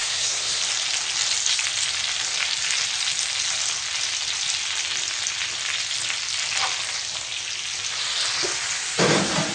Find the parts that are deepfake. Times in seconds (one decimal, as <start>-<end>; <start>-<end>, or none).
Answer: 0.0-0.6